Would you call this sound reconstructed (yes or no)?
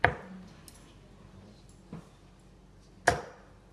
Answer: no